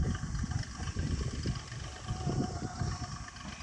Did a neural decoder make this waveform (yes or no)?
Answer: no